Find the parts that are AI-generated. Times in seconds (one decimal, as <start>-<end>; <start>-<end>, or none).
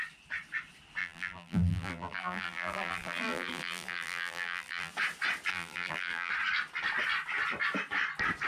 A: 1.0-4.9; 5.5-6.3